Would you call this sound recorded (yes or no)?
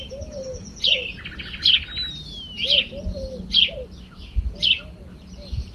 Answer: yes